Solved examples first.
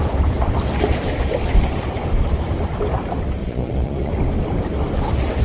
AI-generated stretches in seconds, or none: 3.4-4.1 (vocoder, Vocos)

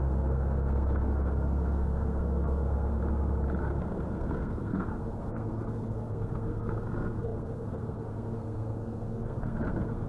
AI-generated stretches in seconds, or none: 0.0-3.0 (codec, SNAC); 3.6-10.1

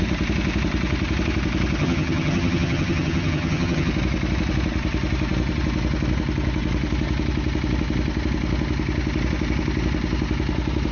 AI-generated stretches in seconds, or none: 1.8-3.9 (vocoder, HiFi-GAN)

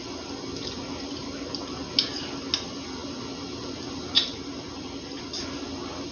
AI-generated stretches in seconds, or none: 4.2-5.4 (vocoder, BigVGAN v2)

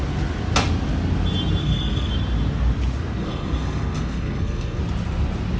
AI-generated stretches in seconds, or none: 1.6-2.1 (codec, SNAC); 3.2-4.8

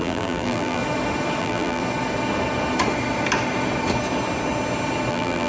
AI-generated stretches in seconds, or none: 0.0-0.8 (vocoder, BigVGAN v2); 1.4-1.8; 5.1-5.5